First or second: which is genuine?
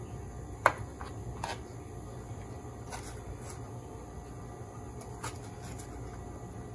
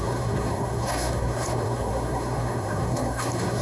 first